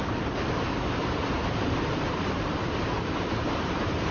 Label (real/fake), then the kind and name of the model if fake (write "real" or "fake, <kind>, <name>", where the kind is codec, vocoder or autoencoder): fake, vocoder, BigVGAN v2